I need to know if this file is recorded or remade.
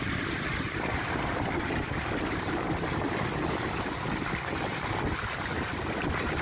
recorded